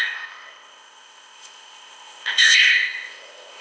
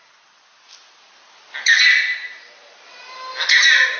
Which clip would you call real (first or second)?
second